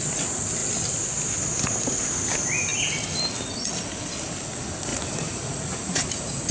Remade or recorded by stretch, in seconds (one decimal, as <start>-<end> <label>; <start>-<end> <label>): 0.0-4.9 recorded; 4.9-6.5 remade